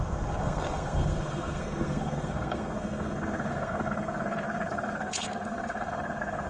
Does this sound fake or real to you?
fake